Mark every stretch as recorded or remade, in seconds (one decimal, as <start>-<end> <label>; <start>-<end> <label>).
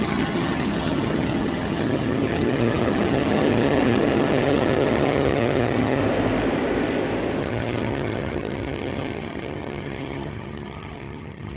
0.0-6.0 remade; 6.0-7.4 recorded; 7.4-11.6 remade